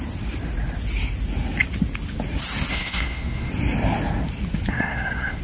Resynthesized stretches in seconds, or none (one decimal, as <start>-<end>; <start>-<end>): 2.7-3.5; 4.7-5.4